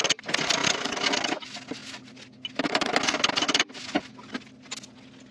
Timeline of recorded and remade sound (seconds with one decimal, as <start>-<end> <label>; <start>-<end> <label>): 0.0-5.3 recorded